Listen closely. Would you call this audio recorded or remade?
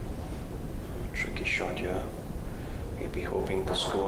recorded